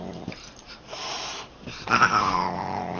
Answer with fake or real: fake